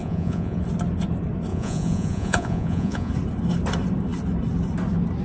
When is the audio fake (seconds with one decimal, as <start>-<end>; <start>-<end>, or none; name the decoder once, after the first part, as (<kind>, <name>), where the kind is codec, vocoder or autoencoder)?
0.0-0.6 (vocoder, Vocos); 1.5-3.1